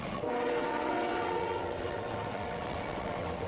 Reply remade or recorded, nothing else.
remade